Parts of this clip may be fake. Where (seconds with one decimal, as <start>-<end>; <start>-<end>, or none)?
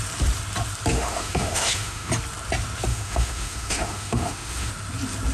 0.9-2.1; 2.9-4.7